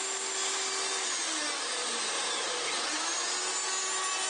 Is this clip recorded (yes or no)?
yes